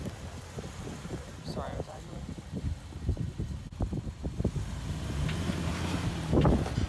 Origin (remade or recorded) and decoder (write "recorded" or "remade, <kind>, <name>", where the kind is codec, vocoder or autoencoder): recorded